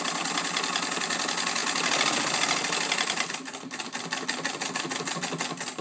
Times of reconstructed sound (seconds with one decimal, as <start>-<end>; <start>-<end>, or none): none